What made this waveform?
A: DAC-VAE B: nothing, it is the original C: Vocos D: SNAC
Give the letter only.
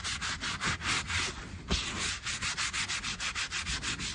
B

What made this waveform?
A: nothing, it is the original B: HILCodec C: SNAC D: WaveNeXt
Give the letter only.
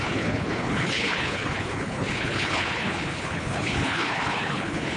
B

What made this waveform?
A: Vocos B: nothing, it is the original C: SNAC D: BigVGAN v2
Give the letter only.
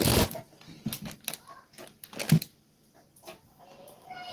B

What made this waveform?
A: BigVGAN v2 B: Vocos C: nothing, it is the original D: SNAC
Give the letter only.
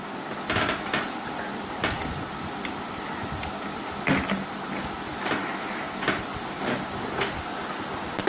C